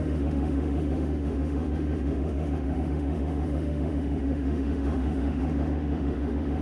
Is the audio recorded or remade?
remade